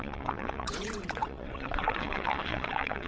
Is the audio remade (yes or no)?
yes